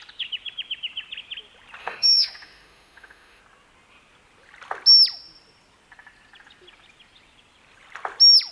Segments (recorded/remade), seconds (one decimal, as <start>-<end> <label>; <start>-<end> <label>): 0.0-1.8 recorded; 1.8-3.4 remade; 3.4-8.5 recorded